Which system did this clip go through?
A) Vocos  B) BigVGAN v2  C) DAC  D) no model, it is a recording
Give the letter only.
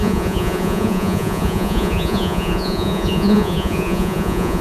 A